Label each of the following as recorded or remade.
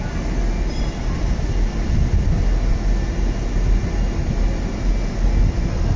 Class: recorded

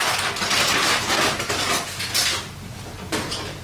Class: recorded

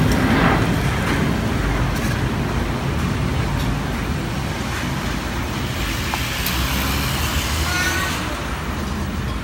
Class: recorded